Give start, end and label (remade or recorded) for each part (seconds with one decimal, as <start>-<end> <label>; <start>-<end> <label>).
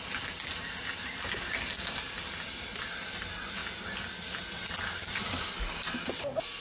0.0-6.6 recorded